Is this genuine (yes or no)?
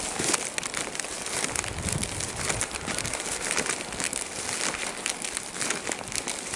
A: yes